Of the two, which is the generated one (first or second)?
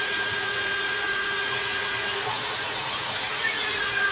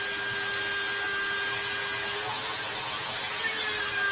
first